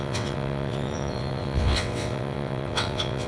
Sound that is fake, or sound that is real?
fake